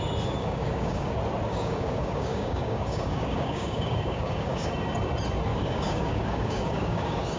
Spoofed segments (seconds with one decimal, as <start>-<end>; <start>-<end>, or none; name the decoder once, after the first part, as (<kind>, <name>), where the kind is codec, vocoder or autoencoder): 0.4-1.1 (codec, DAC); 1.5-4.7; 5.5-7.4